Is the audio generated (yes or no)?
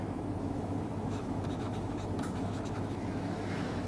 yes